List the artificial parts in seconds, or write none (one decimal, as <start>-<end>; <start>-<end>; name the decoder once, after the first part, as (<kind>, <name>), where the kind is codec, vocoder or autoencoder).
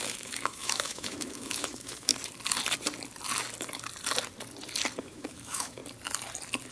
0.0-2.1 (autoencoder, DAC-VAE); 5.0-5.8